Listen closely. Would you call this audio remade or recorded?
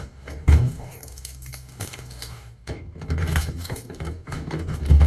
remade